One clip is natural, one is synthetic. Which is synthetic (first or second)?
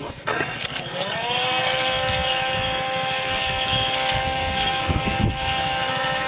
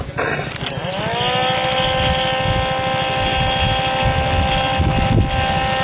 first